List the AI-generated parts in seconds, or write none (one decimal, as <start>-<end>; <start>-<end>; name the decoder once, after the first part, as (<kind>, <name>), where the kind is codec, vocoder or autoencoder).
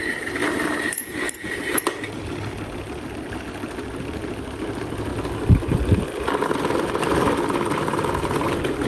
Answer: 0.4-1.8 (vocoder, BigVGAN v2)